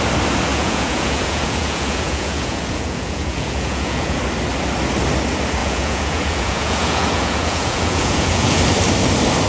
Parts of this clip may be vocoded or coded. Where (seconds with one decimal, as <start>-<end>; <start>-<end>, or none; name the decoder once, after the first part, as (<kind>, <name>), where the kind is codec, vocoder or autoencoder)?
0.5-4.2 (vocoder, Vocos); 5.6-8.6